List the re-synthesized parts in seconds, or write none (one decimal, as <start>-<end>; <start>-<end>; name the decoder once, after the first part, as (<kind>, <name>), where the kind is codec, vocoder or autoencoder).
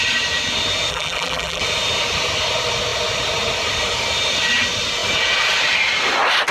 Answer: 0.9-1.6 (vocoder, BigVGAN v2)